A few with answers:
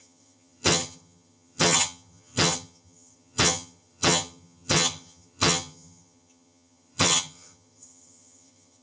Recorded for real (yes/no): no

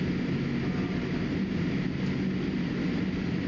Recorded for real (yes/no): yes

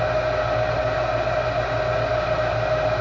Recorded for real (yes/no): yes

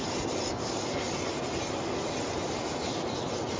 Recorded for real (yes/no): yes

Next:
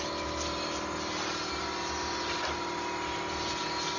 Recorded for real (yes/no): yes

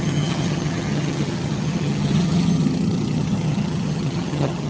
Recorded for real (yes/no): no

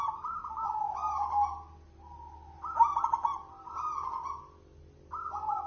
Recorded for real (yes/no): yes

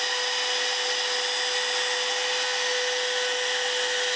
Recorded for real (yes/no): yes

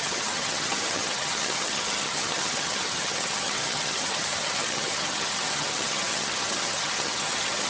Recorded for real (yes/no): no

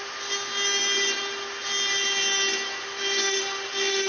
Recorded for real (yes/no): yes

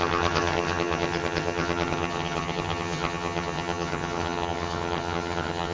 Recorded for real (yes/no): no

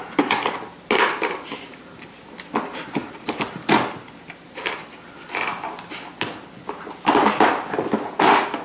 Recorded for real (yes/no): yes